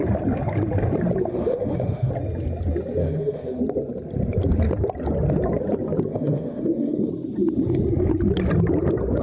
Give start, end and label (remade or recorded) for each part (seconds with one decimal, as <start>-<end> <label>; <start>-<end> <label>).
0.0-1.3 recorded; 1.3-2.1 remade; 2.1-3.0 recorded; 3.0-3.6 remade; 3.6-6.1 recorded; 6.1-7.1 remade; 7.1-9.2 recorded